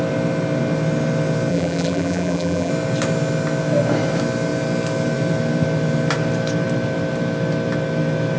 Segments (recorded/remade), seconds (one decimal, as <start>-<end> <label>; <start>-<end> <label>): 0.0-1.5 recorded; 1.5-2.7 remade; 2.7-8.4 recorded